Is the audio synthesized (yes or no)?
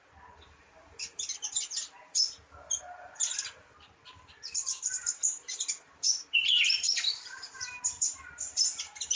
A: no